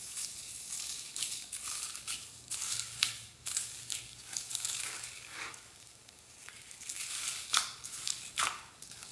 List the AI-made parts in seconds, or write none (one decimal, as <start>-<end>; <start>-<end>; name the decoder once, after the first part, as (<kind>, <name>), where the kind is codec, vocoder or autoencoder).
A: 0.0-9.1 (codec, DAC)